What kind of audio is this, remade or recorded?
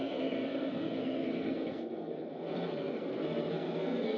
remade